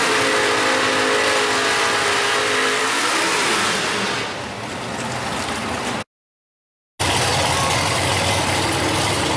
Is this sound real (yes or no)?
yes